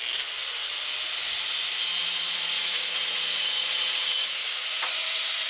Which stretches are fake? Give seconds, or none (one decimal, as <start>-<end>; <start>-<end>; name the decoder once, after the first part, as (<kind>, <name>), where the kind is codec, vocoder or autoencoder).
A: 2.0-5.5 (vocoder, Vocos)